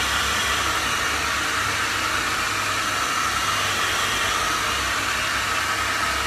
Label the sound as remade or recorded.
recorded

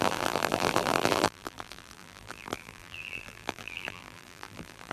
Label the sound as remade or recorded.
remade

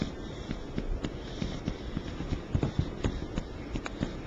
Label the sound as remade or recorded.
remade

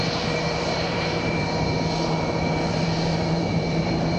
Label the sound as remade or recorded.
remade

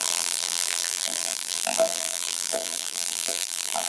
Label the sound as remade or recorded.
remade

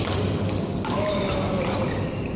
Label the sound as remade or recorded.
recorded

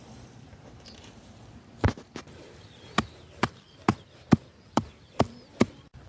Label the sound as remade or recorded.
remade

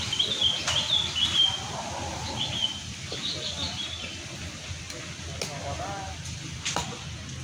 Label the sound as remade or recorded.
recorded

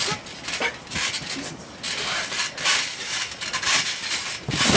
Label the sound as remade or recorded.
recorded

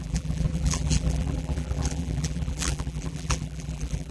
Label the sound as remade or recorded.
remade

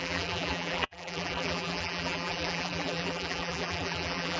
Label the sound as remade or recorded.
remade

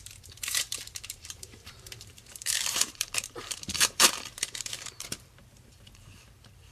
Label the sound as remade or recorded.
remade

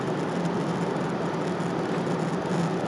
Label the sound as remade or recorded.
recorded